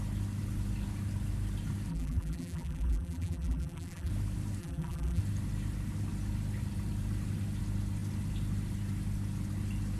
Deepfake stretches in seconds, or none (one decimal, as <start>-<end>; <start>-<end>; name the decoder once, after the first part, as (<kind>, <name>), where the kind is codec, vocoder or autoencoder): 1.9-4.1 (vocoder, BigVGAN v2); 4.6-5.2